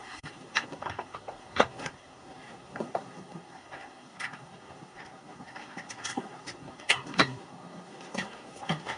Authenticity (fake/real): fake